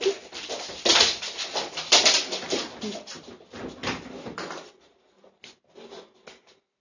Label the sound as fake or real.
real